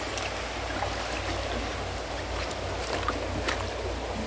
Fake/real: real